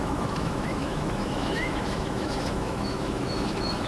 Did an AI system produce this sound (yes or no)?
yes